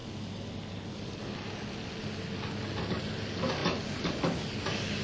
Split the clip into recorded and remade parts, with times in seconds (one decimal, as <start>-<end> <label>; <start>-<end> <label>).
0.0-5.0 recorded